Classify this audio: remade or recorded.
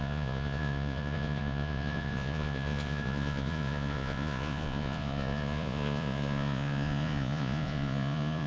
remade